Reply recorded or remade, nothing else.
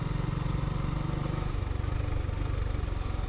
recorded